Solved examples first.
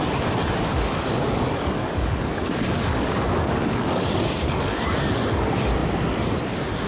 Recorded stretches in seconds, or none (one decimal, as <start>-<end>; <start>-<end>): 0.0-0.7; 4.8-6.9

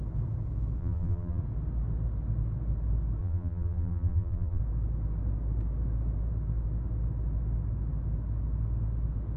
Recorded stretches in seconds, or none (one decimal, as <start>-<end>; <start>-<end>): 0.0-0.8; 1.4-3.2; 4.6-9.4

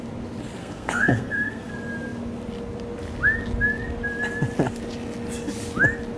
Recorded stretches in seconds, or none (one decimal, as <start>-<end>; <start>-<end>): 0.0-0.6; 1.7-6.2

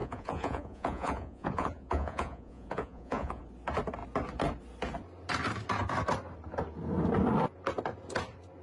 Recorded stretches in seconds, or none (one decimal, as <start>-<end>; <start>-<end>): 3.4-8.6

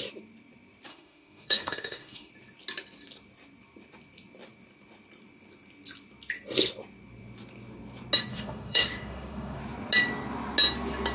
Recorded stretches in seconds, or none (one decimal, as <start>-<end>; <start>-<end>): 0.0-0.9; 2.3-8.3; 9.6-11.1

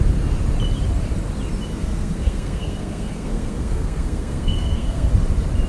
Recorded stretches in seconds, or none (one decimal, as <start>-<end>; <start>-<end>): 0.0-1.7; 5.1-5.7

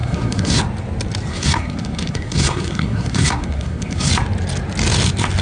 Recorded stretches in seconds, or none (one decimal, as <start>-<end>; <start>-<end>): 0.6-1.3; 4.1-5.4